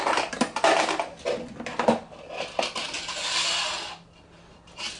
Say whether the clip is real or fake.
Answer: real